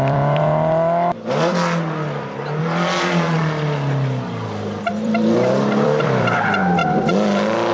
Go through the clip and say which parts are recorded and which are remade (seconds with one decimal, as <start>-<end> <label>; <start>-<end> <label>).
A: 0.0-1.6 remade; 1.6-2.6 recorded; 2.6-3.4 remade; 3.4-5.0 recorded; 5.0-6.8 remade; 6.8-7.7 recorded